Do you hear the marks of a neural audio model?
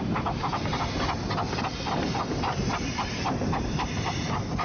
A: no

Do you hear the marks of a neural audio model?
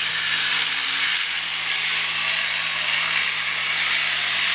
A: no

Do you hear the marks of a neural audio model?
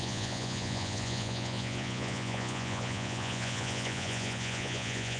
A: yes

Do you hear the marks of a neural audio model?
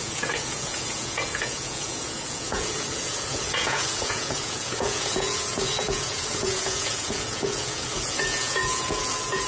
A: yes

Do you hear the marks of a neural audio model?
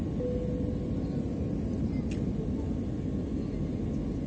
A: no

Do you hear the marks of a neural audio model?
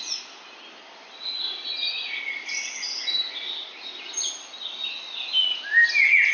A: no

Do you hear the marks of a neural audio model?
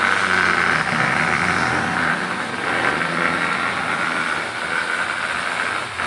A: no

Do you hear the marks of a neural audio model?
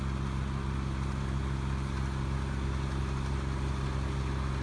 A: no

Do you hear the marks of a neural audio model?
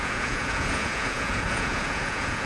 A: yes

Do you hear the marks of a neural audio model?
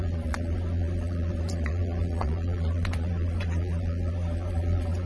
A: yes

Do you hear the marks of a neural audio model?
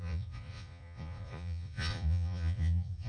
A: yes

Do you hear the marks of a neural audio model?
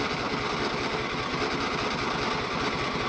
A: no